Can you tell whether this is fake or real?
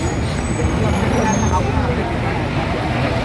real